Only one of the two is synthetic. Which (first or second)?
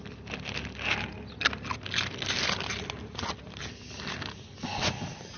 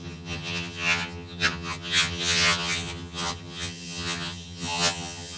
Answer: second